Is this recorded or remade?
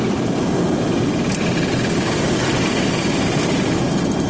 recorded